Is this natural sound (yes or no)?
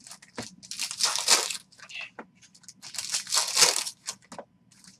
yes